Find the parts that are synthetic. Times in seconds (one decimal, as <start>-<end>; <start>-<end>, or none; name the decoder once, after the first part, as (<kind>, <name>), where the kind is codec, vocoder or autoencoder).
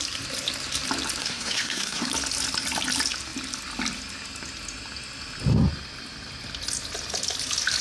1.2-2.1 (codec, SNAC)